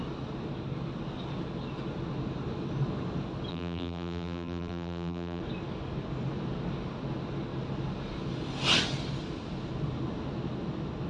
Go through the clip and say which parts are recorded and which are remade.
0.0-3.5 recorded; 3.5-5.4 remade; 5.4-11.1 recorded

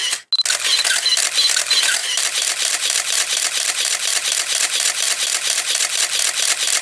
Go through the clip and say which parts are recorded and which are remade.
0.0-2.0 recorded; 2.0-6.0 remade; 6.0-6.8 recorded

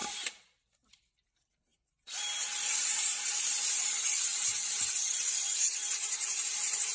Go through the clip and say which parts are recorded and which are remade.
0.0-0.9 recorded; 0.9-1.7 remade; 1.7-2.6 recorded; 2.6-6.9 remade

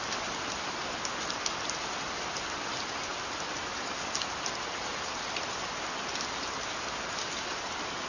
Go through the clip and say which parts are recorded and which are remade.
0.0-8.1 recorded

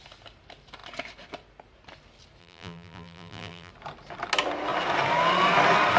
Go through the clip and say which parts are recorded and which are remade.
0.0-2.4 recorded; 2.4-3.7 remade; 3.7-6.0 recorded

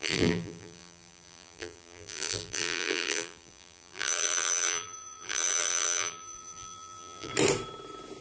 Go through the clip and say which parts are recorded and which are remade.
0.0-7.3 remade; 7.3-8.2 recorded